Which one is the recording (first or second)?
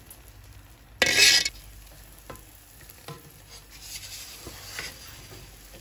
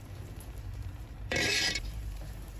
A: first